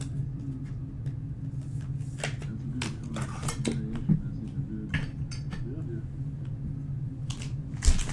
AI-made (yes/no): no